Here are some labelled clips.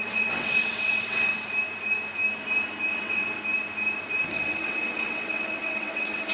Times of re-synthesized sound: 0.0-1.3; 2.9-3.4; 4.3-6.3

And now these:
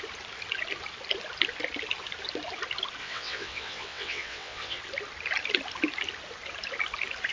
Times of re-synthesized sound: 3.0-4.8

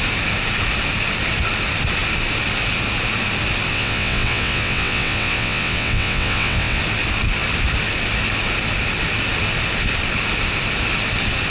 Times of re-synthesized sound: 3.7-6.8

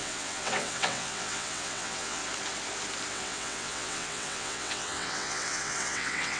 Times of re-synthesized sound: 0.0-2.2; 3.1-6.4

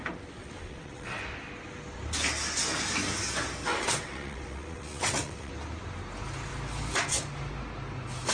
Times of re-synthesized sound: 0.4-1.2; 3.6-5.5